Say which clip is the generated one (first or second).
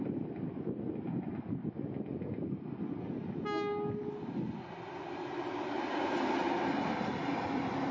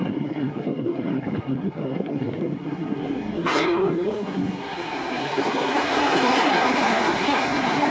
second